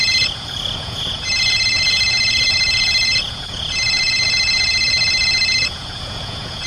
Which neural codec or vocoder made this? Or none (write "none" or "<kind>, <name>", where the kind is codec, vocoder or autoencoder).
vocoder, Vocos